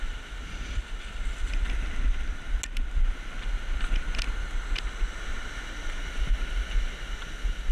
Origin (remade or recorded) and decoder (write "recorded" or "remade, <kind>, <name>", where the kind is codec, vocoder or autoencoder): recorded